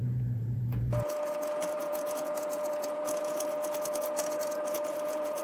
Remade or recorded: remade